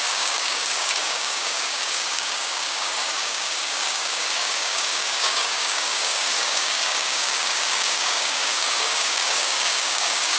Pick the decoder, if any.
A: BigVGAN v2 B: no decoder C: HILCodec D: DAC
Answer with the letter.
D